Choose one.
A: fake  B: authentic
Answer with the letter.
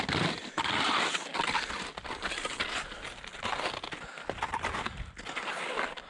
B